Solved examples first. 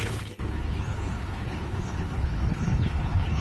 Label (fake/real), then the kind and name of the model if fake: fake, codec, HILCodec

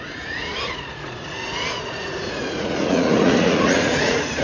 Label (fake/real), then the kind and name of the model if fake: fake, vocoder, Vocos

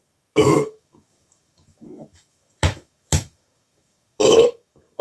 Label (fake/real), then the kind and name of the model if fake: fake, autoencoder, DAC-VAE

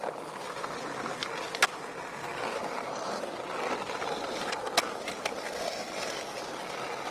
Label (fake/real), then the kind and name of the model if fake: real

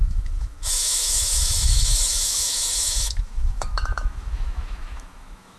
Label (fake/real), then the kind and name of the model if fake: fake, autoencoder, DAC-VAE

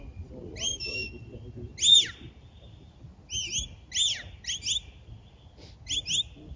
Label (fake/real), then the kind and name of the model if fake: real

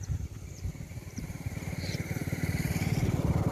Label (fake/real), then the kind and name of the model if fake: fake, vocoder, BigVGAN v2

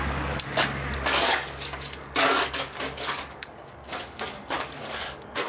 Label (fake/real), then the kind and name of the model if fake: fake, codec, DAC